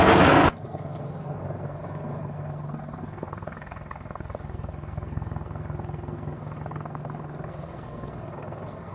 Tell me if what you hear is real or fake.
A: fake